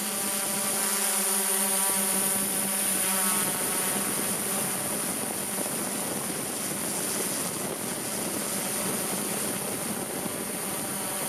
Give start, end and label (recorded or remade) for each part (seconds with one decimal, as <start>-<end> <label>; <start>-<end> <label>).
0.0-11.3 recorded